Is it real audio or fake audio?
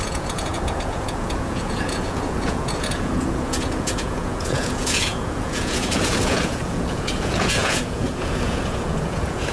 fake